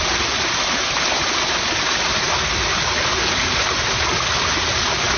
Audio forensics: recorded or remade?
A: recorded